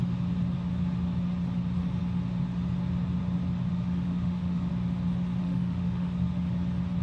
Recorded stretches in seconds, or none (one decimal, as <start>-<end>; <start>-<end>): 0.0-3.7; 4.7-5.4; 6.5-7.0